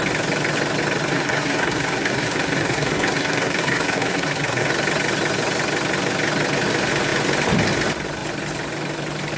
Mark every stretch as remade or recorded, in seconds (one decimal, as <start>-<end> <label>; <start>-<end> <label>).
0.0-1.1 recorded; 1.1-4.7 remade; 4.7-9.4 recorded